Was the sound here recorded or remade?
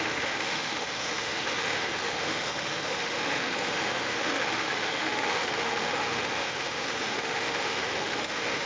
remade